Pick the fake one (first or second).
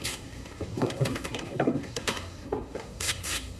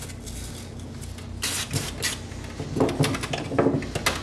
first